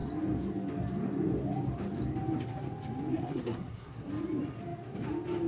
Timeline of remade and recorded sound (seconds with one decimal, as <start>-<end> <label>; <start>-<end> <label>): 0.0-3.1 recorded; 3.1-4.1 remade; 4.1-5.5 recorded